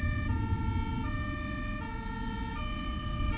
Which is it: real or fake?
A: real